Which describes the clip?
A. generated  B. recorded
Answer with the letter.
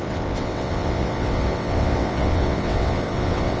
A